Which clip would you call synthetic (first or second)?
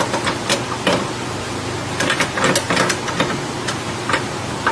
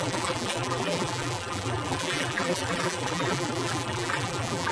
second